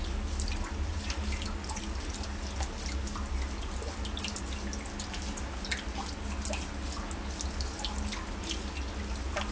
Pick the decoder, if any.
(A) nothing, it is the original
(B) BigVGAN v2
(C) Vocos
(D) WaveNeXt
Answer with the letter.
A